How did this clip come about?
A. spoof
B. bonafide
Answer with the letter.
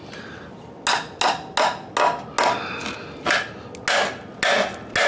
B